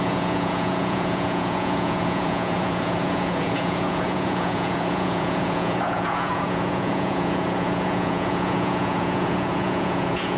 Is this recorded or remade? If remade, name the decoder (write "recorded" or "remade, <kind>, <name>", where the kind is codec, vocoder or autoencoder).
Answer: remade, vocoder, Vocos